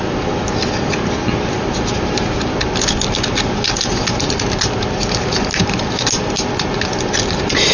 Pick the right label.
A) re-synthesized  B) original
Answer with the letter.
B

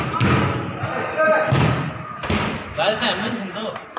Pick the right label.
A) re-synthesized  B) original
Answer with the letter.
B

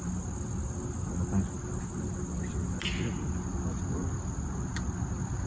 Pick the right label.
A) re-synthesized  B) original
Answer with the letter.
B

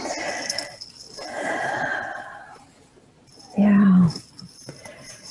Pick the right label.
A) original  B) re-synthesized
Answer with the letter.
A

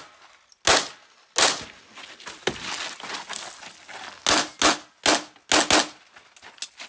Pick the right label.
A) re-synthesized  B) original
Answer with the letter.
B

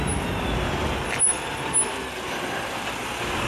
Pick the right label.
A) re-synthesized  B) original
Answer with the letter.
B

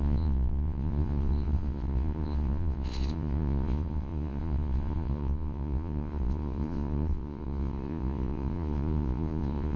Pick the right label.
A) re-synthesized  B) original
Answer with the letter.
A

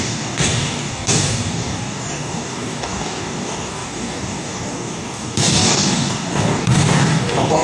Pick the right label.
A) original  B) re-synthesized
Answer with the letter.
B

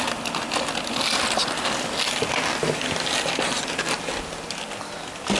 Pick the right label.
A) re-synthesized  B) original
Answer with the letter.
B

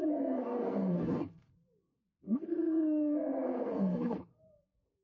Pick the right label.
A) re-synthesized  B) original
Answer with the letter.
A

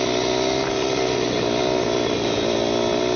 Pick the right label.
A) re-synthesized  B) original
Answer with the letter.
B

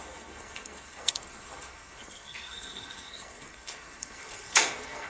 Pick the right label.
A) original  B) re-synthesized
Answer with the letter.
B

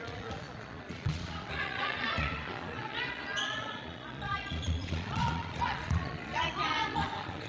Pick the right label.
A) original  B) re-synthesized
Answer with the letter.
B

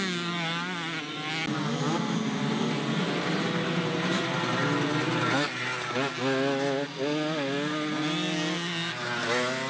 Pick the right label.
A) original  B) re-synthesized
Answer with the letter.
A